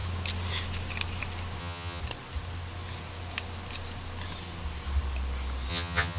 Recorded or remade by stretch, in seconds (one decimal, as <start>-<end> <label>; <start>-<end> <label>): 0.0-1.6 recorded; 1.6-2.0 remade; 2.0-5.7 recorded; 5.7-6.2 remade